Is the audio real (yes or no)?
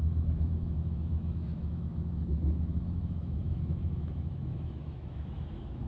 no